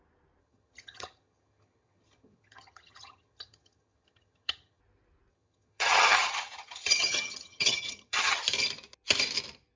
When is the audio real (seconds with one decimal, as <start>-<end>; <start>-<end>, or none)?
0.0-0.4; 4.8-5.3; 8.4-9.8